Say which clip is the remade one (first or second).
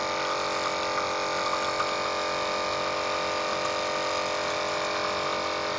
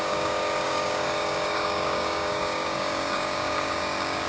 second